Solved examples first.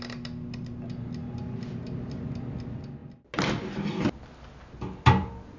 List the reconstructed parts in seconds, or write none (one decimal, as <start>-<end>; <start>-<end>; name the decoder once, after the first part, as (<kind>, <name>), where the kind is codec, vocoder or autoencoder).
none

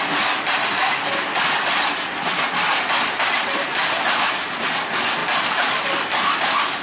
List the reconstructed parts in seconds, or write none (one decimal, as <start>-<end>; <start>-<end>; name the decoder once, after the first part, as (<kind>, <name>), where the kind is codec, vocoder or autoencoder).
none

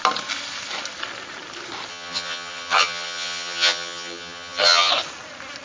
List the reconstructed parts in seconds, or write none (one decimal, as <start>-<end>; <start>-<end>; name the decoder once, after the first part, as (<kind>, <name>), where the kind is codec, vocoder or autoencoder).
1.9-4.9 (vocoder, HiFi-GAN)

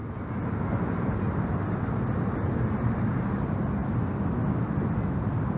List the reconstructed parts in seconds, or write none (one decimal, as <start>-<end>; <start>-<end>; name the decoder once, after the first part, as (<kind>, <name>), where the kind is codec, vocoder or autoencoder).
none

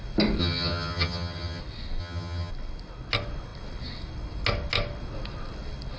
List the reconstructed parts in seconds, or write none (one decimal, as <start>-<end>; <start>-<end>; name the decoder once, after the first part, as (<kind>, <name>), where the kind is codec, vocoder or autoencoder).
0.4-1.6 (vocoder, HiFi-GAN); 2.0-2.5

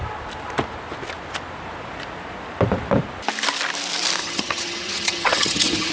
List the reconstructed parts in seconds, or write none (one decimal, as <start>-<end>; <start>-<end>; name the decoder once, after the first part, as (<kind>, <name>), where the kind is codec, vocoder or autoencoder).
4.2-5.9 (vocoder, HiFi-GAN)

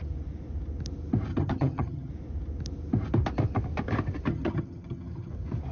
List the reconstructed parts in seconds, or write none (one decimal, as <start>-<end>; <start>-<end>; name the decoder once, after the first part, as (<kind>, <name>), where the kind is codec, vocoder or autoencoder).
1.3-2.1 (vocoder, HiFi-GAN); 4.3-5.3